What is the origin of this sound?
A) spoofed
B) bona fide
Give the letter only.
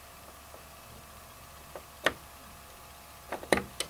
B